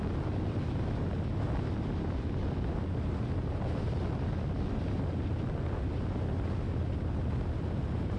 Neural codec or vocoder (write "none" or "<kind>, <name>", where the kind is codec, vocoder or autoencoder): none